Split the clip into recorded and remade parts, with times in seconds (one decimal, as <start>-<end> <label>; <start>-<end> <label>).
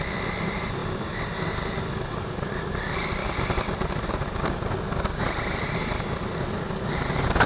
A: 0.0-7.5 recorded